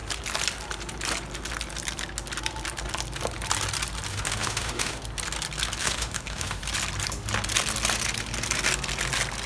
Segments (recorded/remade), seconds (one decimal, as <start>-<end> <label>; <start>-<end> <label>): 0.0-4.1 recorded; 4.1-5.0 remade; 5.0-5.8 recorded; 5.8-6.6 remade; 6.6-9.5 recorded